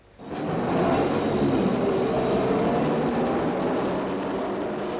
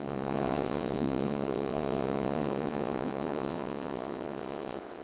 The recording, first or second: first